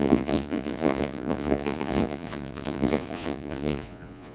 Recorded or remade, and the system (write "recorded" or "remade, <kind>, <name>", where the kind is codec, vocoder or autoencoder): remade, vocoder, Vocos